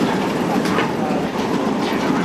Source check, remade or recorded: recorded